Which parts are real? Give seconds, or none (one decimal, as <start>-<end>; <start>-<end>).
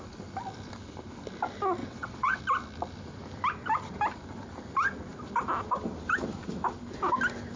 0.0-1.8; 2.4-7.6